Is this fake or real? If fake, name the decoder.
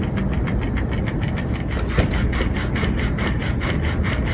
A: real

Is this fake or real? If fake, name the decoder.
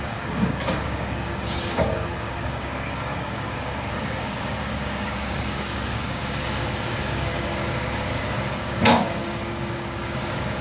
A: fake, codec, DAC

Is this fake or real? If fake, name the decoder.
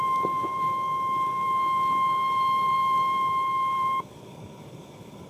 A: fake, codec, DAC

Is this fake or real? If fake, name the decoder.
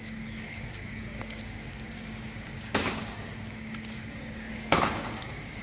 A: fake, codec, DAC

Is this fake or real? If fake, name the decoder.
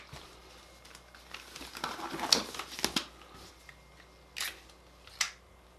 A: real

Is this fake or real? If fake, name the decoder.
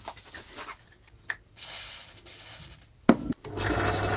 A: real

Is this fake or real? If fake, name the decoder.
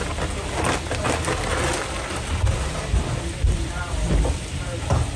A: real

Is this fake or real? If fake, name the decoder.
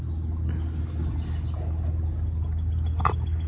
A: real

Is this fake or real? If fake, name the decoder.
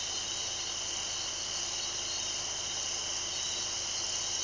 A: real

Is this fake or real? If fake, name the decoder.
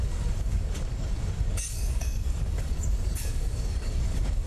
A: fake, codec, DAC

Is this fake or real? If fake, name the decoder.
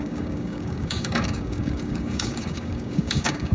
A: fake, codec, DAC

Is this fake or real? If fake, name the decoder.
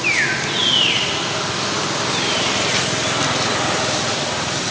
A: real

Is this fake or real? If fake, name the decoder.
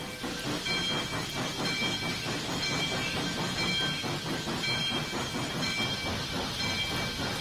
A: real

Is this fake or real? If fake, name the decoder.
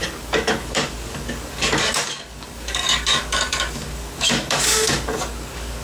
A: fake, codec, DAC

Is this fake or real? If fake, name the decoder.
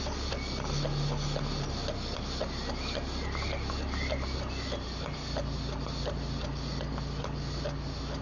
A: real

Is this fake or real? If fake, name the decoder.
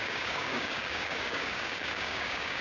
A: fake, codec, DAC